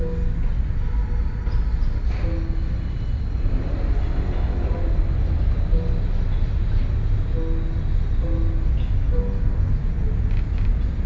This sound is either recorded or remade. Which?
recorded